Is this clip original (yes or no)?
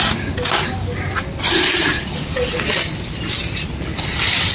yes